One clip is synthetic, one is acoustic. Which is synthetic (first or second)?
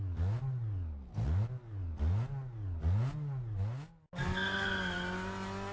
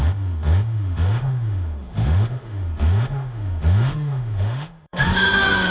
second